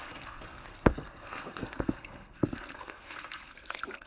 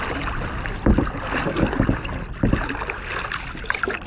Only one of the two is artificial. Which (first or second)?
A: first